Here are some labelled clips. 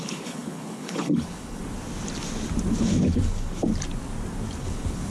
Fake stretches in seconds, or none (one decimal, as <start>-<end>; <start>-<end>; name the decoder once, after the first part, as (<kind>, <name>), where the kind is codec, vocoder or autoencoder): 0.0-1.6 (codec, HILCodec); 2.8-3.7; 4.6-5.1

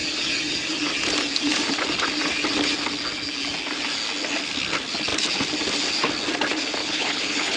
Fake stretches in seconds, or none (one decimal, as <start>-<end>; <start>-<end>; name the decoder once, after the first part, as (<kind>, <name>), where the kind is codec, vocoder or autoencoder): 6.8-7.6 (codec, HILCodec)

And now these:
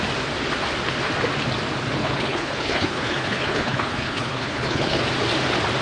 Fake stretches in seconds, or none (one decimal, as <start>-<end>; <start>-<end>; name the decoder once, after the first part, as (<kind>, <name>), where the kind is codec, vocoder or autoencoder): 2.0-5.0 (codec, HILCodec)

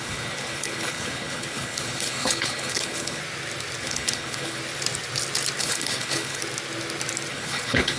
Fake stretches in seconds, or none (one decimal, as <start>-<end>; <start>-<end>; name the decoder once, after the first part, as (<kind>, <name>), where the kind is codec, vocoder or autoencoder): 0.0-3.2 (codec, HILCodec); 3.8-4.6; 5.6-6.4; 7.3-8.0

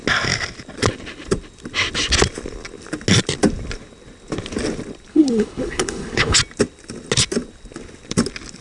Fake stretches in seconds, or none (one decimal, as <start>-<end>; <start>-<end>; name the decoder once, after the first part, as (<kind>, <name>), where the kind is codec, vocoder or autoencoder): 5.1-6.4 (codec, HILCodec)